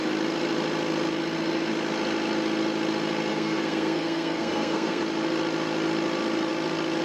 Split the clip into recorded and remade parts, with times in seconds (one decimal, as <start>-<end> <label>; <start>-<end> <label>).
0.0-3.3 recorded; 3.3-5.0 remade; 5.0-7.0 recorded